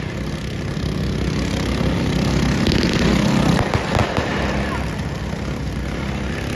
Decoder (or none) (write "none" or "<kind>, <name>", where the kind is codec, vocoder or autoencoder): none